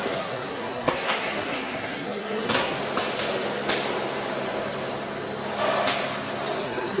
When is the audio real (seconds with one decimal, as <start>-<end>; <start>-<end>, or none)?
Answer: 2.8-6.6